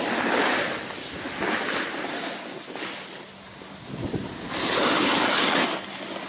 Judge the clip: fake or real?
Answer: real